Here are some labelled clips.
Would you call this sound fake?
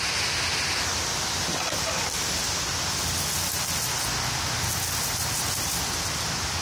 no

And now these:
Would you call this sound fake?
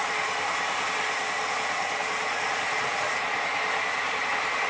no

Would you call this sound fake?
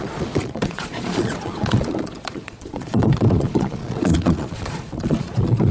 yes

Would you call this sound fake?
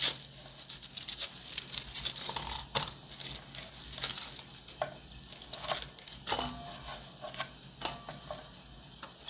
no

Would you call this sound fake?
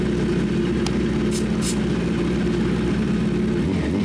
no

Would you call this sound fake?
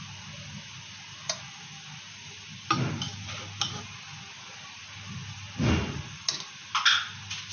no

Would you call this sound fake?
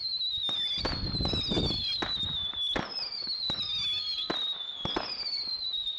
no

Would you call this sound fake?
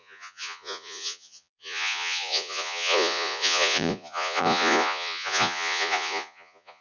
yes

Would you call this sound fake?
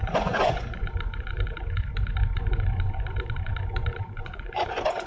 yes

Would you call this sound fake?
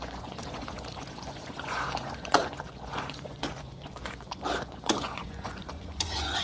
yes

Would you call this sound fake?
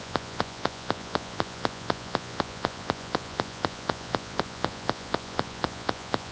yes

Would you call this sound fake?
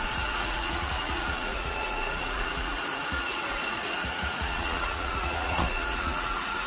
yes